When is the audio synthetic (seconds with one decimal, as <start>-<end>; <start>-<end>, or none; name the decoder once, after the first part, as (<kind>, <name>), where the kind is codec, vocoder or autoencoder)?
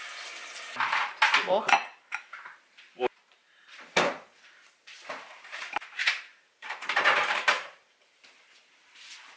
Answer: 1.8-3.7 (vocoder, BigVGAN v2); 4.9-8.2